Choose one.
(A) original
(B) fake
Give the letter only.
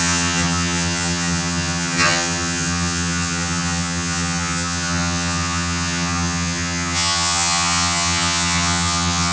B